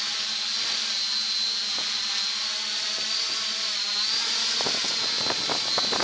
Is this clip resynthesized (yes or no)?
no